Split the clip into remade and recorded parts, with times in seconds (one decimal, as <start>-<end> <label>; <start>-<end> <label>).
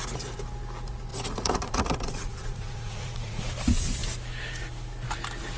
0.0-1.1 recorded; 1.1-3.5 remade; 3.5-5.6 recorded